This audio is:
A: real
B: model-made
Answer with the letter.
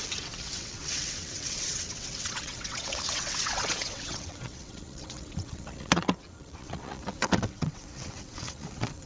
B